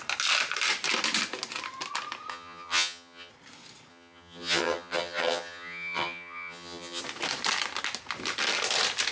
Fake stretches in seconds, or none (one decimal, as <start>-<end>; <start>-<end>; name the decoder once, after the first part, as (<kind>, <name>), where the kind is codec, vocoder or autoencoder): 2.3-3.3 (vocoder, HiFi-GAN); 3.9-7.0

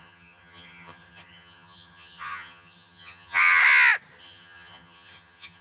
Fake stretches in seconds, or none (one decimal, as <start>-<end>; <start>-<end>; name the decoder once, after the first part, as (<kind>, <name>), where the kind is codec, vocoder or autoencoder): 0.0-3.6 (vocoder, HiFi-GAN); 4.2-5.6

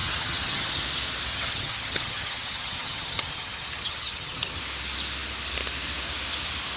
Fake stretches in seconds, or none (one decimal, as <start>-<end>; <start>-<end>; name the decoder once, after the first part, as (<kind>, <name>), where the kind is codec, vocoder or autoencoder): 0.0-0.7 (vocoder, HiFi-GAN); 1.3-4.6

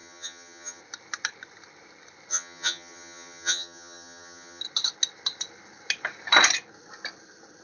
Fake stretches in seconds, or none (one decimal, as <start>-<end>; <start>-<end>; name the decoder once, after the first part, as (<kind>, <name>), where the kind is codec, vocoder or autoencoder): 0.0-0.8 (vocoder, HiFi-GAN); 2.3-4.6

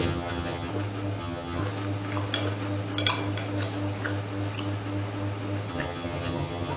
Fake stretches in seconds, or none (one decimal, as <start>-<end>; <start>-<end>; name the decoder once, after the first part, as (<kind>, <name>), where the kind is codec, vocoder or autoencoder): 0.0-0.7 (vocoder, HiFi-GAN); 1.2-1.6; 5.7-6.8

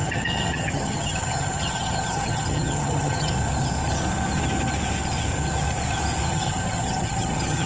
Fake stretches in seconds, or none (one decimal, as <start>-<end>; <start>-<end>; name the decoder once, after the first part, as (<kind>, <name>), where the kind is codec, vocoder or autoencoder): 0.0-3.3 (vocoder, HiFi-GAN); 6.3-7.7

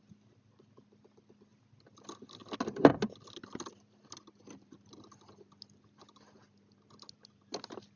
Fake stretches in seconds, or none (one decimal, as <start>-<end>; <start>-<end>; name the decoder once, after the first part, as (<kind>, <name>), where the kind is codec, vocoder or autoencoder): none

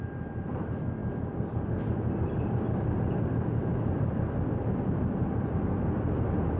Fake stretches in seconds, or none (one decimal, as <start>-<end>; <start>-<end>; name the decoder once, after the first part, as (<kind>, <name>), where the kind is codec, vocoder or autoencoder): none